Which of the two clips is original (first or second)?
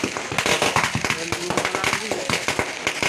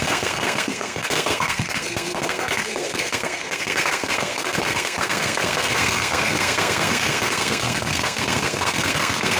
first